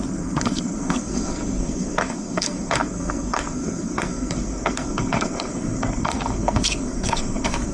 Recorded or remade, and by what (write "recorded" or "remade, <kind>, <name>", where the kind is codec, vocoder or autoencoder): remade, codec, SNAC